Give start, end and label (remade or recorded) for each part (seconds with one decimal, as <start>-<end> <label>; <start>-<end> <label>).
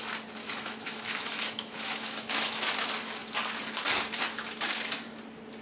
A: 0.0-0.4 recorded; 0.4-2.6 remade; 2.6-5.6 recorded